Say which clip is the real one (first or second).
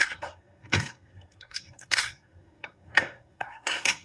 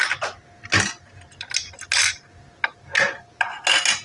second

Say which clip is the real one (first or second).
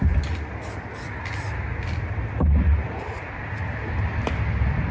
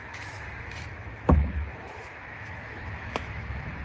first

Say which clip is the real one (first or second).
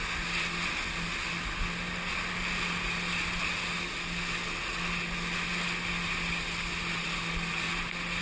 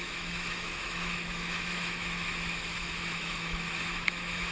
first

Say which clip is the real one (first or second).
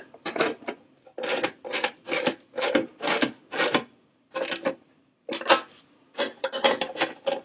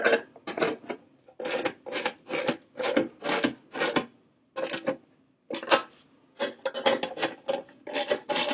second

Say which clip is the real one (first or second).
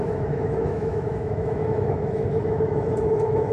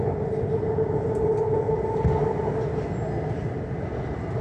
second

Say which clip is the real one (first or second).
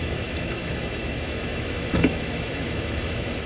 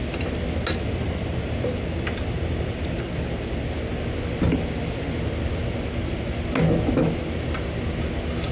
second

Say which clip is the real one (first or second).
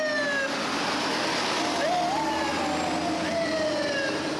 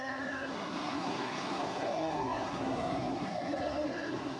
first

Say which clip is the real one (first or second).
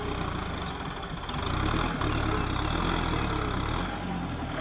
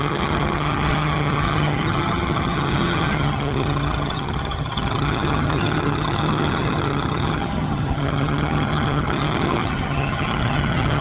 first